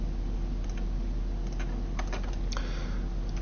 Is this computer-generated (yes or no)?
no